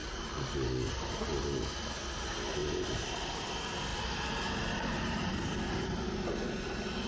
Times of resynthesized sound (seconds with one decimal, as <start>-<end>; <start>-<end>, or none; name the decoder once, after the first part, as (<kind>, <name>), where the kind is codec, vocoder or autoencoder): 2.6-3.2 (vocoder, BigVGAN v2); 3.9-7.1